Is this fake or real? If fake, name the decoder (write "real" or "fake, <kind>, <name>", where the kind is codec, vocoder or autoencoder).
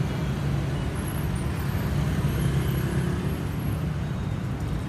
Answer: real